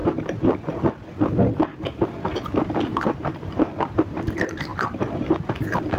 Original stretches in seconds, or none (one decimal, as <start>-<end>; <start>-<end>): 0.7-1.7; 4.2-4.7